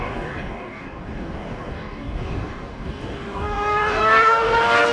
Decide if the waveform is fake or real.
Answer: fake